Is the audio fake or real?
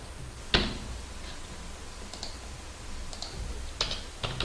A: real